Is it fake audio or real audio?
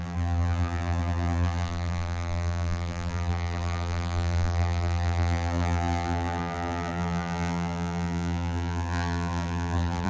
fake